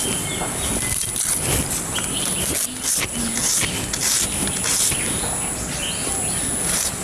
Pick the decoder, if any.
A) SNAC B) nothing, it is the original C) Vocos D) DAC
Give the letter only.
B